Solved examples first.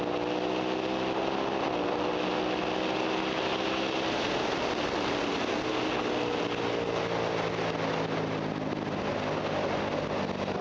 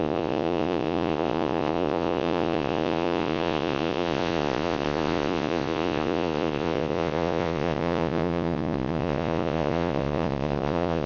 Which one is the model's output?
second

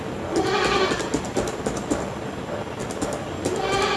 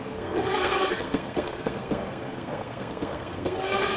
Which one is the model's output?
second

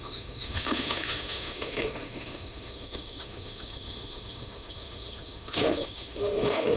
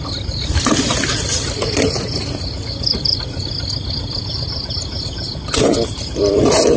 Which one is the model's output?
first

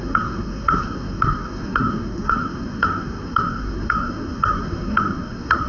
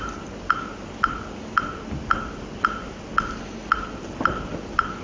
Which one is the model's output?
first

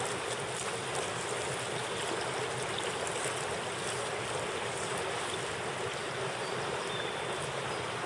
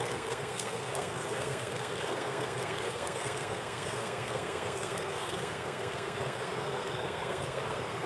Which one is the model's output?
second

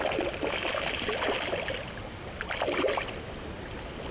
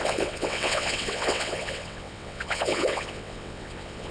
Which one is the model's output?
second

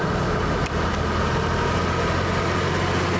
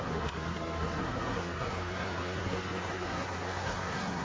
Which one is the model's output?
second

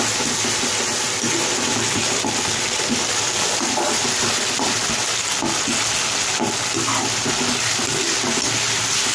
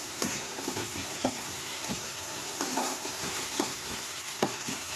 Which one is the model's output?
second